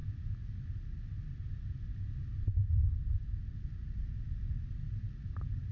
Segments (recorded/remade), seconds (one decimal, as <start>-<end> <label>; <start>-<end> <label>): 0.0-5.7 recorded